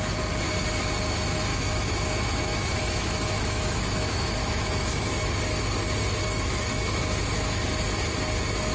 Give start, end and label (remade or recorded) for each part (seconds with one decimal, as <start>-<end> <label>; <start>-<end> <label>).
0.0-1.5 recorded; 1.5-5.3 remade; 5.3-6.2 recorded; 6.2-7.0 remade; 7.0-8.7 recorded